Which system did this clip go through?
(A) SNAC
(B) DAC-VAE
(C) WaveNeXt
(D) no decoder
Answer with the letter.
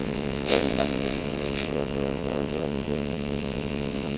C